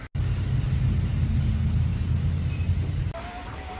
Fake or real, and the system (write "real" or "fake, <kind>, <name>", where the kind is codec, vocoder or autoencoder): real